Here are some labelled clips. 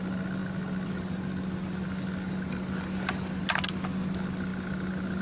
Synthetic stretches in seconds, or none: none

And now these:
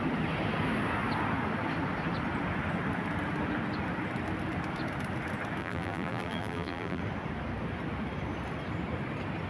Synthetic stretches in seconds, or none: 5.6-7.0 (vocoder, BigVGAN v2)

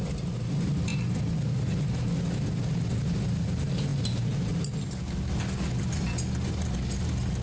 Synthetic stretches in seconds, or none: 0.9-1.6 (vocoder, BigVGAN v2)

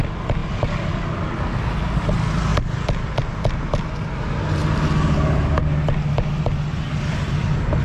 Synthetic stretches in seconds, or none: none